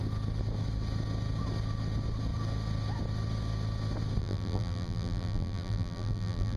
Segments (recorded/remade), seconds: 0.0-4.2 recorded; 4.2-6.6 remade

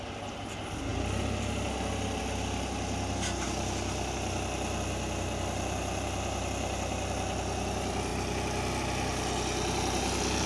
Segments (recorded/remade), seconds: 0.0-10.5 recorded